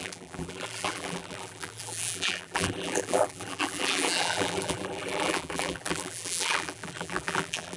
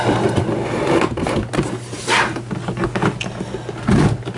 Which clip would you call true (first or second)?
second